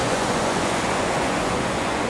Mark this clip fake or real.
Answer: fake